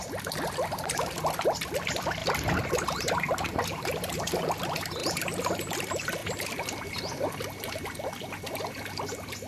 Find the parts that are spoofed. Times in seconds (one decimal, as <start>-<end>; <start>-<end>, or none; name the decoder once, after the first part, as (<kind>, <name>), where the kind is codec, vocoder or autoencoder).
2.2-4.4 (vocoder, BigVGAN v2)